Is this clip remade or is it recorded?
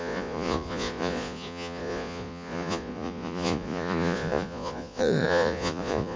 remade